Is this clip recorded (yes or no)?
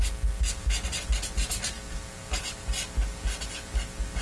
yes